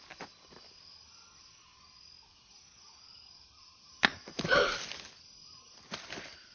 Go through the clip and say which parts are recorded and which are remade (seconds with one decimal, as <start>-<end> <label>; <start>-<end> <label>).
0.0-6.5 recorded